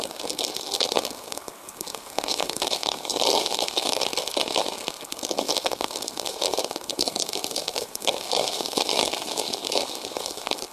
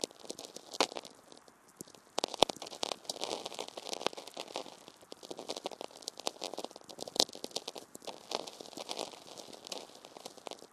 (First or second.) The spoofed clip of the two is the first